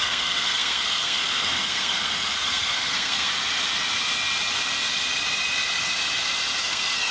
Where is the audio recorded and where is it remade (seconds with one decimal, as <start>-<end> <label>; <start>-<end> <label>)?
0.0-3.3 remade; 3.3-6.6 recorded; 6.6-7.1 remade